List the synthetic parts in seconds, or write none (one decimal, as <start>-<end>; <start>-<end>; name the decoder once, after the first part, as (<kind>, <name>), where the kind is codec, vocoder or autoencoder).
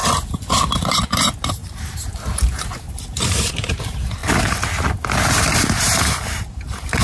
0.8-1.6 (vocoder, BigVGAN v2); 2.4-4.2; 5.8-7.0